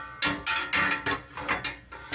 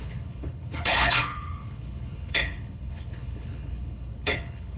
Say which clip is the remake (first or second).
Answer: second